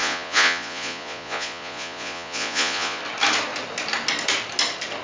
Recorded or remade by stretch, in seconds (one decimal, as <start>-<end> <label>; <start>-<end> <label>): 0.0-3.0 remade; 3.0-5.0 recorded